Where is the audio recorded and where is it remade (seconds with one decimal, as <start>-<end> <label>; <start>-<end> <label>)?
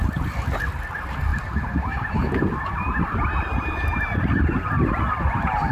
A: 0.0-5.7 recorded